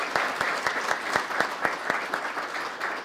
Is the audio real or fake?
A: real